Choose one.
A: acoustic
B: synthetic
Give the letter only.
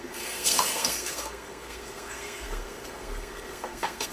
B